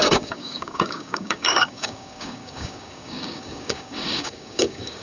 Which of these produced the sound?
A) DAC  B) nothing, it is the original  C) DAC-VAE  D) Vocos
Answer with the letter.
A